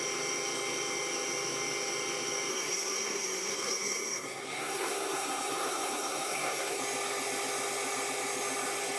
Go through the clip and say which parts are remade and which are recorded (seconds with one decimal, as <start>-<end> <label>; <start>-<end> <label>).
0.0-2.5 recorded; 2.5-6.8 remade; 6.8-9.0 recorded

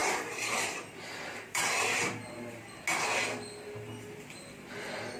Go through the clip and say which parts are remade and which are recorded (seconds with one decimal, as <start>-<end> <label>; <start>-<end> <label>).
0.0-1.8 remade; 1.8-5.2 recorded

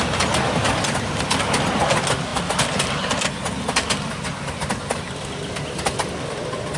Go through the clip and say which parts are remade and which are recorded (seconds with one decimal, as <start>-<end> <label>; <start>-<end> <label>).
0.0-6.8 recorded

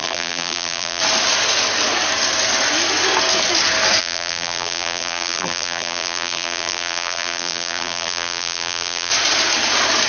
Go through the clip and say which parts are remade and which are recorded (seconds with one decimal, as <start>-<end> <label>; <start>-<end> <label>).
0.0-1.0 remade; 1.0-4.0 recorded; 4.0-9.1 remade; 9.1-10.1 recorded

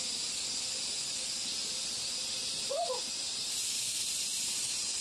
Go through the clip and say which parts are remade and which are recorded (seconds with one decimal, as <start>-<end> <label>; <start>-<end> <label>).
0.0-5.0 recorded

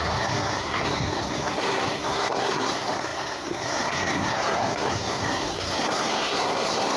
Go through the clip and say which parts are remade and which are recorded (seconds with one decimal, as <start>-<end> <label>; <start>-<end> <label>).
0.0-7.0 remade

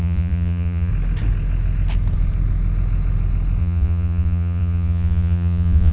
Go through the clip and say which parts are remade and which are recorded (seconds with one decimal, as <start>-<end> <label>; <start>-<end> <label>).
0.0-0.9 remade; 0.9-3.6 recorded; 3.6-5.9 remade

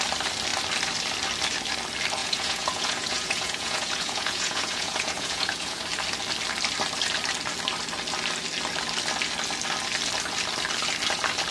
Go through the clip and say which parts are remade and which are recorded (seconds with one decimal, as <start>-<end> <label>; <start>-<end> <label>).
0.0-2.2 recorded; 2.2-5.8 remade; 5.8-11.5 recorded